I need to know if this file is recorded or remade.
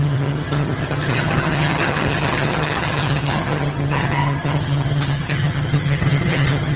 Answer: remade